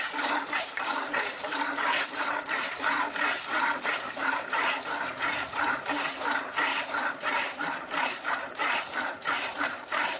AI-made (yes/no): yes